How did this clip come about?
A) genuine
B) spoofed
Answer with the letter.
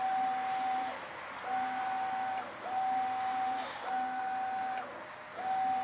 A